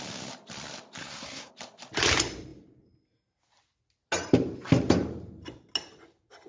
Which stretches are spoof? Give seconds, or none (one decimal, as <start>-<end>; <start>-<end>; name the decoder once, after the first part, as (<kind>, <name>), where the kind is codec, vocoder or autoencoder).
1.0-1.5 (codec, SNAC)